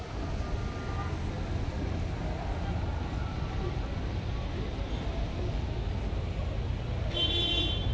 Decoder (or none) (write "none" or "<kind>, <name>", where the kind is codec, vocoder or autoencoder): none